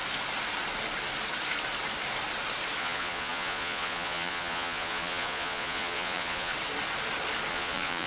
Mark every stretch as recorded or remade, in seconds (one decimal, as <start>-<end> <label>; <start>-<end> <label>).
0.0-2.8 recorded; 2.8-6.5 remade; 6.5-7.5 recorded; 7.5-8.1 remade